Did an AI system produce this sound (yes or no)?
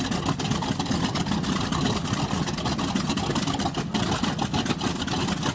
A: no